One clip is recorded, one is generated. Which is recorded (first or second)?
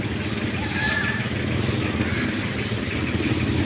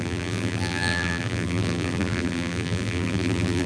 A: first